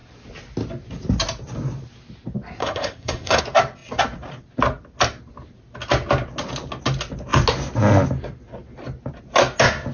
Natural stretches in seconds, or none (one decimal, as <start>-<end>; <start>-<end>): 0.0-2.6; 3.4-9.9